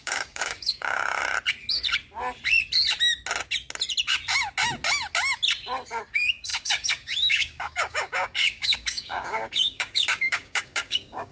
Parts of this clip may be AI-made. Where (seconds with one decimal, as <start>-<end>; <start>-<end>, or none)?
0.0-1.2; 6.1-11.3